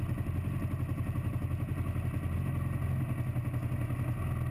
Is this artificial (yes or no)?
no